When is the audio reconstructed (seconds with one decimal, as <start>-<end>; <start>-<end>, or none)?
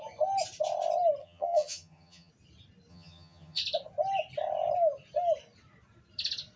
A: 1.2-2.3; 2.9-3.6